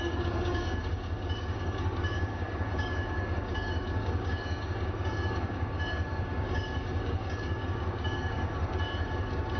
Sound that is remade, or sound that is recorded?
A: remade